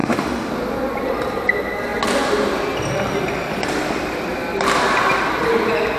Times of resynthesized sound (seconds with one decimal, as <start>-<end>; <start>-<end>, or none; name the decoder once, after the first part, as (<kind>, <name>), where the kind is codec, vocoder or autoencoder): 0.0-0.5 (autoencoder, DAC-VAE)